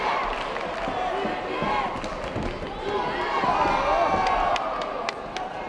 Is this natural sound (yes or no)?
yes